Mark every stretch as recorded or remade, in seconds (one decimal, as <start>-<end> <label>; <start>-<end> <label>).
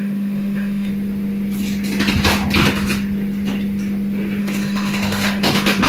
0.0-0.9 remade; 0.9-4.4 recorded; 4.4-5.9 remade